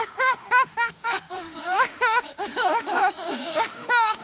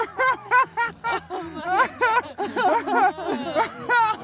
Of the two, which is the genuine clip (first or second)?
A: second